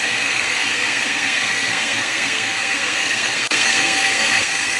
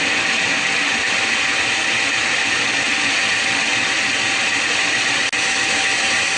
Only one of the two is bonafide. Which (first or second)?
second